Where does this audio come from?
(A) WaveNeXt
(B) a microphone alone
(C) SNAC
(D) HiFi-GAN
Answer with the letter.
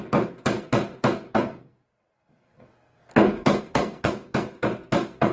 C